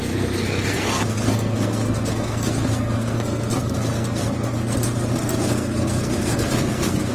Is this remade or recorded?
remade